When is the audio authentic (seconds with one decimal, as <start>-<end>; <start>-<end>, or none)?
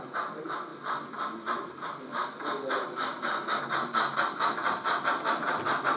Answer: 0.0-6.0